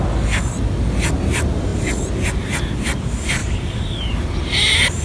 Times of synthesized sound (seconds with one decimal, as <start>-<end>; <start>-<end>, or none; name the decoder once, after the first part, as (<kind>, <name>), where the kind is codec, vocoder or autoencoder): 3.4-4.0 (codec, DAC)

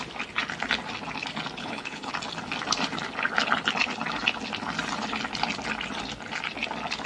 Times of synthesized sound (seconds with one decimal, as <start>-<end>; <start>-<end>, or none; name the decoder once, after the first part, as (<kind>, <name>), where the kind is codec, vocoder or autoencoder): 1.6-2.1 (codec, HILCodec)

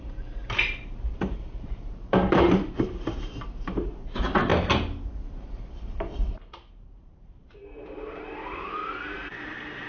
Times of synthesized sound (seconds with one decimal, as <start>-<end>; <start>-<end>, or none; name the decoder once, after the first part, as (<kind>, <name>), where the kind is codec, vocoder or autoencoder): 0.0-4.5 (vocoder, BigVGAN v2); 5.1-8.8; 9.4-9.9

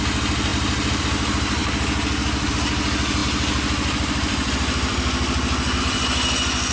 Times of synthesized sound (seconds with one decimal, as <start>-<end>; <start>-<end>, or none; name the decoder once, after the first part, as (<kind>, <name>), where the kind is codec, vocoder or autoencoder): none

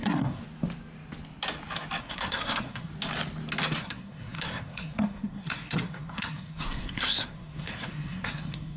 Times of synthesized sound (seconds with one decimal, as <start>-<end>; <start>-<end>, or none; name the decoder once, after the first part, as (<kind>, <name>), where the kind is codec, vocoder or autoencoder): 0.0-0.4 (codec, SNAC); 2.0-2.9; 3.8-8.8

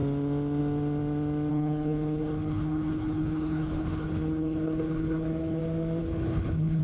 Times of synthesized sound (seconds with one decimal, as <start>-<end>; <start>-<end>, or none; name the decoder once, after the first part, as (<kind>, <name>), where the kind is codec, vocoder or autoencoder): 1.5-5.6 (codec, HILCodec); 6.0-6.8

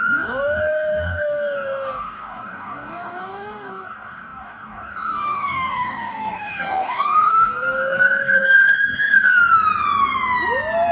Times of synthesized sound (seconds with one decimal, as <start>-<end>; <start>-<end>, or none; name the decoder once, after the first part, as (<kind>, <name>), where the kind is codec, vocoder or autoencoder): 0.0-9.4 (codec, DAC)

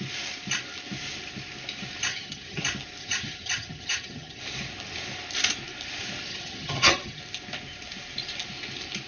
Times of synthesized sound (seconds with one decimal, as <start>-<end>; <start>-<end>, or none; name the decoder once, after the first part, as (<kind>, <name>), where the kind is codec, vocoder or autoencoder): 2.1-2.6 (vocoder, HiFi-GAN); 3.0-4.4; 6.3-7.2